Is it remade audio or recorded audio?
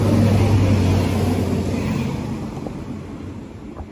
recorded